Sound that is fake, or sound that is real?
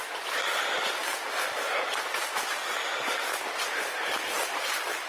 real